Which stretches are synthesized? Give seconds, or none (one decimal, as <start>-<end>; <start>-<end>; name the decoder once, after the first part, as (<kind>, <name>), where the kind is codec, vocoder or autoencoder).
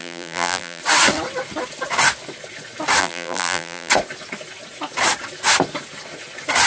0.0-0.8 (vocoder, BigVGAN v2); 3.0-3.9